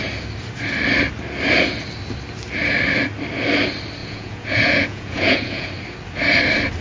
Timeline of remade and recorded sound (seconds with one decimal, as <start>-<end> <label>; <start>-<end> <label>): 0.0-4.0 recorded; 4.0-5.7 remade; 5.7-6.8 recorded